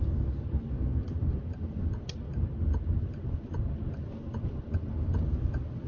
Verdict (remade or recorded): recorded